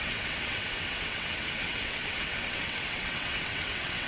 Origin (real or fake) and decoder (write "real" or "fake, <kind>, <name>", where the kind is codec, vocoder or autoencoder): fake, vocoder, WaveNeXt